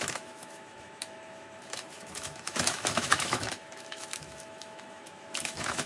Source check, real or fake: fake